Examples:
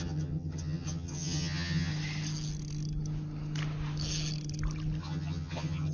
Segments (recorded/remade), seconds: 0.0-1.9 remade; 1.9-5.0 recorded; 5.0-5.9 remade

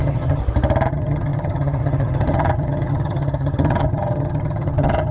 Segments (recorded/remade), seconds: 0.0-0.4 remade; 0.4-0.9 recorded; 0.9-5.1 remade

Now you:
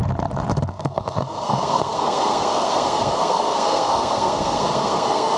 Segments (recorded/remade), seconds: 0.0-0.7 recorded; 0.7-5.4 remade

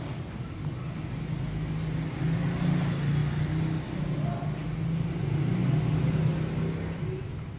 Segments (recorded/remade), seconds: 0.0-7.6 recorded

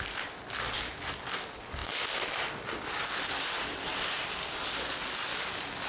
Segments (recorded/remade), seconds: 0.0-5.3 recorded; 5.3-5.9 remade